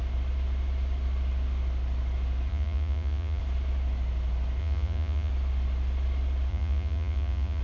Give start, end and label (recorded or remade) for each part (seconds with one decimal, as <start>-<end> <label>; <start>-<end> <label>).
0.0-2.5 recorded; 2.5-3.4 remade; 3.4-4.6 recorded; 4.6-5.3 remade; 5.3-6.5 recorded; 6.5-7.6 remade